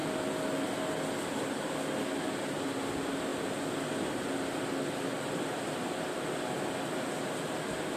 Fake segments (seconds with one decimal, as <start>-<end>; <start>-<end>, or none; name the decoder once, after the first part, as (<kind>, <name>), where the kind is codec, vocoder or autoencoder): none